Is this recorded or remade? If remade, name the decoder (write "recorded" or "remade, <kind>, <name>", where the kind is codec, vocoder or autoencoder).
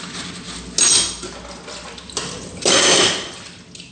recorded